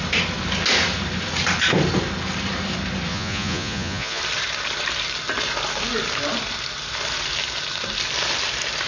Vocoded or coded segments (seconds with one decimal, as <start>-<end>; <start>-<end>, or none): 3.1-4.2